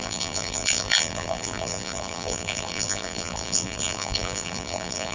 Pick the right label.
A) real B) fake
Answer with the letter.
B